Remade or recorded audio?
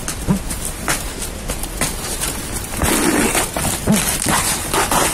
recorded